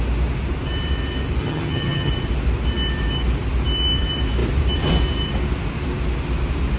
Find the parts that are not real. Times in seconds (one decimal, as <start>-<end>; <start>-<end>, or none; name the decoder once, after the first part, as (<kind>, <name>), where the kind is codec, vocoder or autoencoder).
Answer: 1.4-2.1 (vocoder, HiFi-GAN)